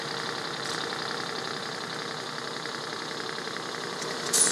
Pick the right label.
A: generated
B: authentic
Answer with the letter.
A